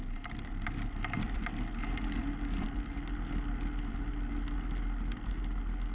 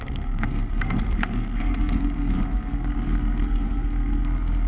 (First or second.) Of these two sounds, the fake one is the second